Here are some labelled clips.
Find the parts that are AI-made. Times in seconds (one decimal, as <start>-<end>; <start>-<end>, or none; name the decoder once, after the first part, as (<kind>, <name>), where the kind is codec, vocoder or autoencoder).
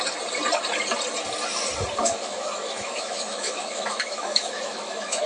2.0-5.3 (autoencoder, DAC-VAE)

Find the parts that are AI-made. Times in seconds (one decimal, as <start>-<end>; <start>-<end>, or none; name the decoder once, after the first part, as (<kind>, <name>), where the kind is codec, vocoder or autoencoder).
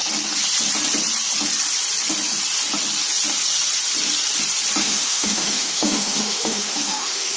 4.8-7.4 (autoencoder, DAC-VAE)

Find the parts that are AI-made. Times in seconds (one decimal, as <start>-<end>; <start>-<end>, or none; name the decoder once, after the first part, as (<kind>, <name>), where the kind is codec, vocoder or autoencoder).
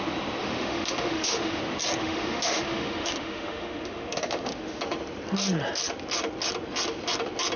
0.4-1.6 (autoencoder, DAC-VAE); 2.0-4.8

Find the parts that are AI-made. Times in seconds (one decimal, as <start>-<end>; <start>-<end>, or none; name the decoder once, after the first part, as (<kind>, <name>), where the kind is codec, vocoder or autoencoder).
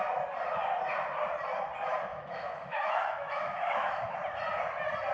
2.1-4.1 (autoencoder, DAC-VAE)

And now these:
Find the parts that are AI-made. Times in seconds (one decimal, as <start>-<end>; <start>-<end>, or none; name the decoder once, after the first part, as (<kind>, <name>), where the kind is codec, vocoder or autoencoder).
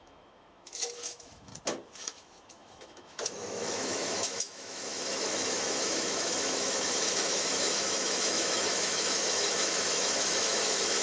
0.0-1.5 (autoencoder, DAC-VAE); 2.0-11.0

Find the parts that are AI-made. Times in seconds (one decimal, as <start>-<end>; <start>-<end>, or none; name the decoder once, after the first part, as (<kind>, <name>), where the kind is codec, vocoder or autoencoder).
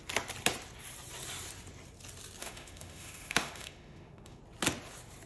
2.4-4.4 (autoencoder, DAC-VAE)